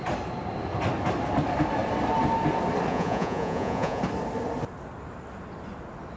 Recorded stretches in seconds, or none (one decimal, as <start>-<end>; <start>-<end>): 0.0-2.9; 4.0-6.2